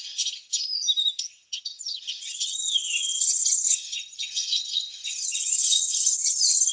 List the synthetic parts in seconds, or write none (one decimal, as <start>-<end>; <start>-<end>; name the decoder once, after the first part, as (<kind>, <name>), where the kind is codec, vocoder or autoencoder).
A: 0.0-0.6 (vocoder, HiFi-GAN); 1.3-6.7